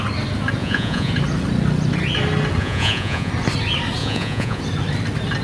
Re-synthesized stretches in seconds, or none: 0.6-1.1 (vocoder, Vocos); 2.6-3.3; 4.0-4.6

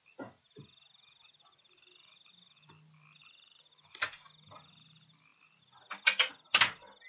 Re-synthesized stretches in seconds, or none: none

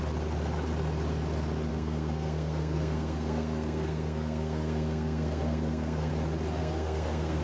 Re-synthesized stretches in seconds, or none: 1.7-6.1 (codec, SNAC); 6.6-7.4

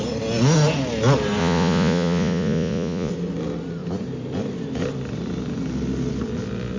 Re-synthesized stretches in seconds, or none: 1.4-3.1 (vocoder, Vocos)

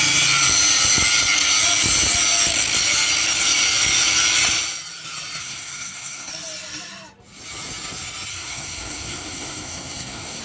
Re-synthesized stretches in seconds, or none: 5.4-6.3 (codec, SNAC); 8.3-10.4

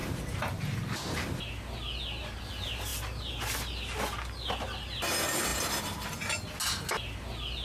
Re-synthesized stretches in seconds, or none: 0.0-0.6 (vocoder, BigVGAN v2)

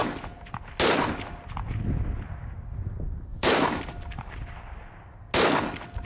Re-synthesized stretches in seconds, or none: 3.3-3.8 (autoencoder, DAC-VAE)

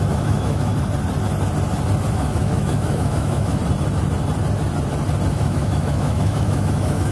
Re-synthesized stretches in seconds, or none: 0.0-0.7 (autoencoder, DAC-VAE); 2.1-3.6; 5.3-7.1